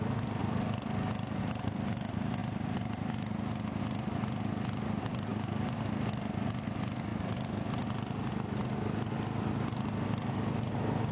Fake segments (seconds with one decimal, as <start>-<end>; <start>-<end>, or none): 5.3-5.9